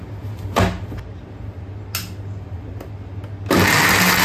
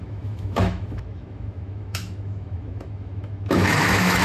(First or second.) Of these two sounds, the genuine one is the first